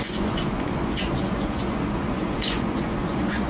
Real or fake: fake